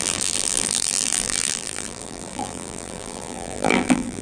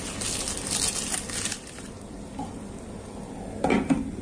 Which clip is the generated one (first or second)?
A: first